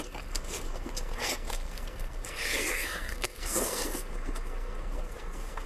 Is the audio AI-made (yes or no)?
yes